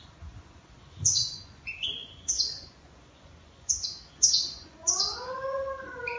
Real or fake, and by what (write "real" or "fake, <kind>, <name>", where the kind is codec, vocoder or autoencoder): fake, vocoder, Vocos